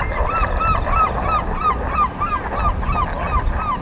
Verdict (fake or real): real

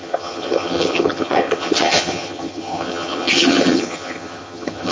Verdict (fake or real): fake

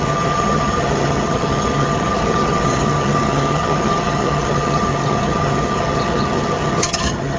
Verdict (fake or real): fake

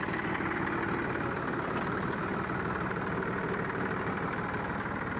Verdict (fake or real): real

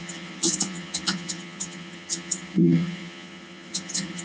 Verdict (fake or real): fake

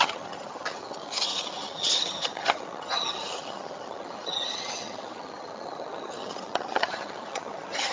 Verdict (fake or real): fake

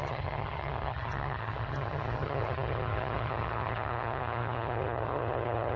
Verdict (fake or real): fake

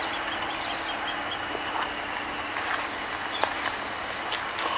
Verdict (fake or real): real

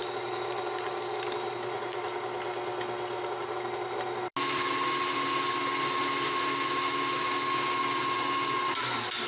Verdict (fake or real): real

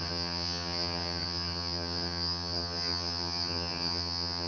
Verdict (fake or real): fake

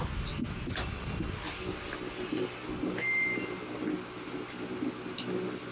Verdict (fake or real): real